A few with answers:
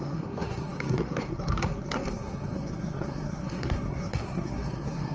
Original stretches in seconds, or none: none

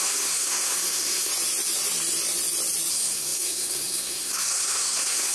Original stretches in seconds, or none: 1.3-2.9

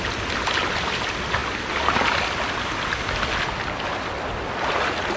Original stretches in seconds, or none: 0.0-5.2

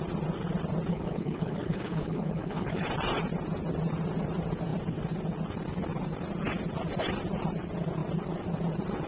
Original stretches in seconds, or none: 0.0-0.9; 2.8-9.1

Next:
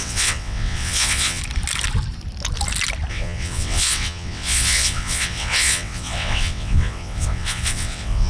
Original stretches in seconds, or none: 1.4-3.1

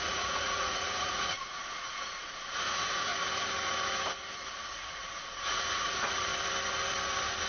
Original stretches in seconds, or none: 3.1-4.5; 6.3-7.5

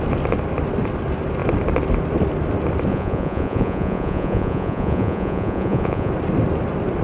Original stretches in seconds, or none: 0.0-2.9; 6.1-7.0

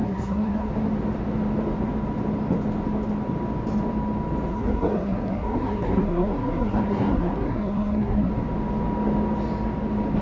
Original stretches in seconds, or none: 0.7-4.5; 8.3-10.2